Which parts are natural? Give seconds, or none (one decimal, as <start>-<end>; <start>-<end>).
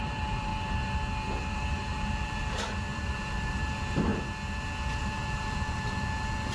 0.5-1.4; 4.1-5.0